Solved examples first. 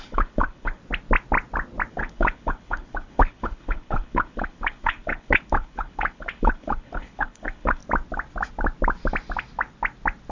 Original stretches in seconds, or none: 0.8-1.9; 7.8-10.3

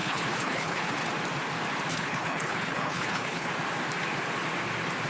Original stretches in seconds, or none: 0.9-1.9; 3.5-5.1

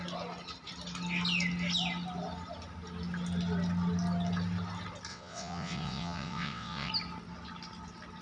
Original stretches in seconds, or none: 0.0-5.1; 6.9-8.2